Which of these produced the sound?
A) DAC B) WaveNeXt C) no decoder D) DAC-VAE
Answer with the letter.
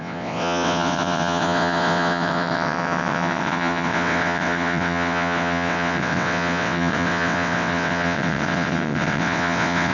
B